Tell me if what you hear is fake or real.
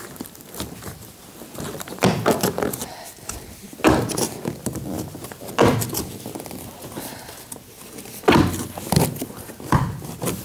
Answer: real